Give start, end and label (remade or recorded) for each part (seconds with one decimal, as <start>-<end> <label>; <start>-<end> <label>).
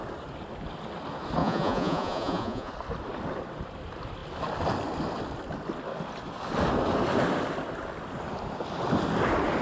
0.0-1.4 recorded; 1.4-2.7 remade; 2.7-9.6 recorded